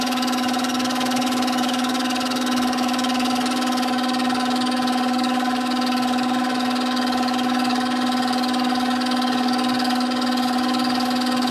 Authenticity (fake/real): fake